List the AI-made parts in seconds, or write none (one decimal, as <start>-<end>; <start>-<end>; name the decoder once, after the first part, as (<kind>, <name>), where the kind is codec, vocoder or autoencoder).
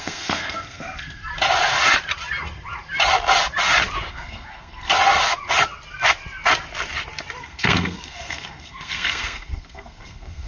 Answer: 0.0-1.3 (codec, SNAC); 4.1-4.9; 7.4-10.5